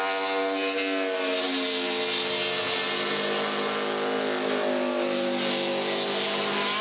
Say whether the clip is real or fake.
real